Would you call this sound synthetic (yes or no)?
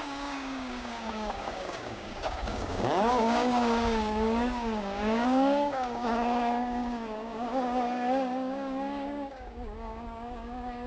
yes